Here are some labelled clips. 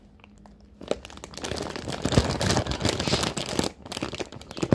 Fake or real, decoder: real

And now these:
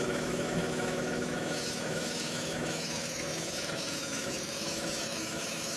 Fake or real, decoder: fake, autoencoder, DAC-VAE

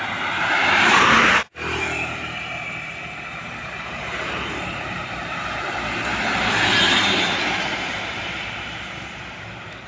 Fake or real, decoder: fake, vocoder, BigVGAN v2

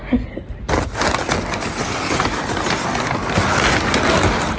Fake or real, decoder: real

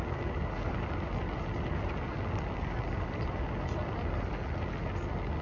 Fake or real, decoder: real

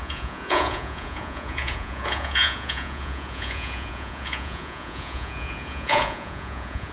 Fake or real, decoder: fake, vocoder, Vocos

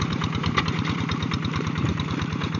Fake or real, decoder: fake, vocoder, BigVGAN v2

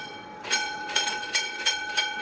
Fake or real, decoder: fake, vocoder, WaveNeXt